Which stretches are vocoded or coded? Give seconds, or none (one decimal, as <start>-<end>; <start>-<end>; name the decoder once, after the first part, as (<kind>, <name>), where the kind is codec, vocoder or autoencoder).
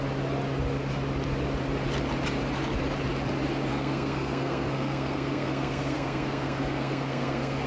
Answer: 3.7-7.7 (codec, SNAC)